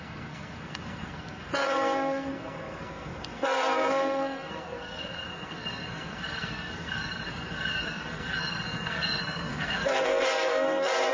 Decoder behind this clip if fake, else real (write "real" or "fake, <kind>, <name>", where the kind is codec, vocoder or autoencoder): fake, codec, SNAC